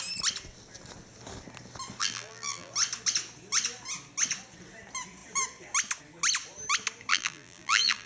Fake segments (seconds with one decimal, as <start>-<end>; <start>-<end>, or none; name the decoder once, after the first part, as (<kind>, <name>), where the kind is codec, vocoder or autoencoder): 2.0-2.7 (vocoder, BigVGAN v2); 7.1-8.1